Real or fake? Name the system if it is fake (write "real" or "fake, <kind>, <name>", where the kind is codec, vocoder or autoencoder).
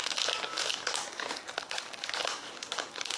fake, codec, DAC